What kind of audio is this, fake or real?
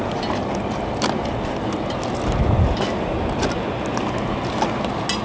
real